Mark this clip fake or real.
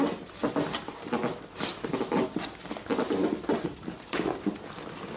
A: real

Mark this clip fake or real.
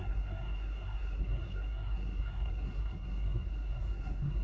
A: fake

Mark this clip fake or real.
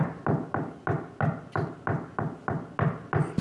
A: real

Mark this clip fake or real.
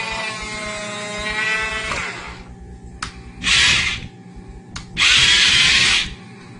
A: real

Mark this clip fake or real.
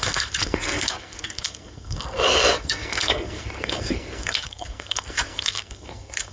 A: fake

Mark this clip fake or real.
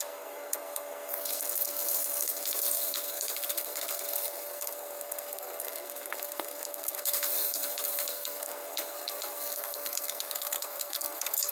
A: fake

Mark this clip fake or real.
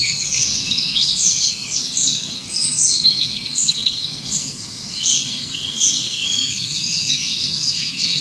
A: fake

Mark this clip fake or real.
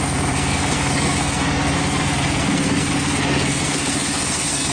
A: fake